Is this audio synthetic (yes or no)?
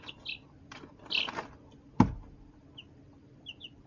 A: no